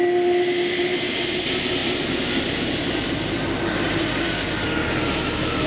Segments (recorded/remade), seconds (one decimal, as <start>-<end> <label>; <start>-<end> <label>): 0.0-1.8 recorded; 1.8-4.5 remade; 4.5-5.7 recorded